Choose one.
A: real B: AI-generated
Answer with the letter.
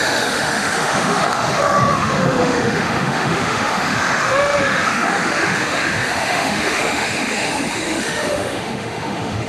B